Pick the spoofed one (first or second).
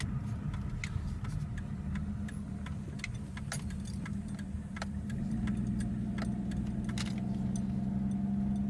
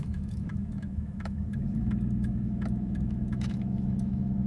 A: second